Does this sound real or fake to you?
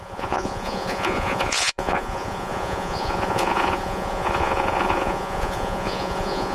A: fake